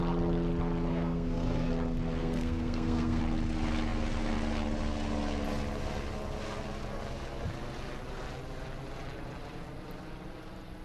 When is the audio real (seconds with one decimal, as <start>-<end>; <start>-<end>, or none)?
0.0-0.9; 1.7-2.2; 3.2-10.8